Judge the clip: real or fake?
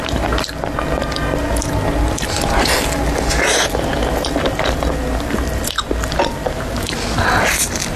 real